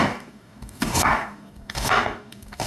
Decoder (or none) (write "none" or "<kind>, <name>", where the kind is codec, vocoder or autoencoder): codec, DAC